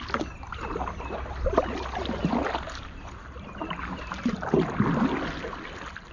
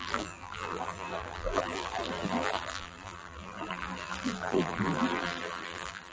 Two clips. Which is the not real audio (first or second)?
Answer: second